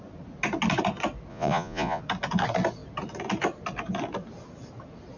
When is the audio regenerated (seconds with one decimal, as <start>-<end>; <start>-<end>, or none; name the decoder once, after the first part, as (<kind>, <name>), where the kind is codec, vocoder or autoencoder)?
1.3-2.0 (vocoder, Vocos)